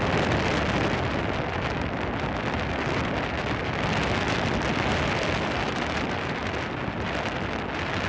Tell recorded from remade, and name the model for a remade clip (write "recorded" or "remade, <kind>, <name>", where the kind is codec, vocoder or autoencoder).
recorded